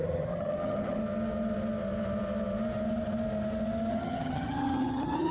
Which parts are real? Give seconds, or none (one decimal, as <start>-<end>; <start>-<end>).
1.0-3.9